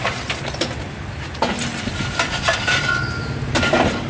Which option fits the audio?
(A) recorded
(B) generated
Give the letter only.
A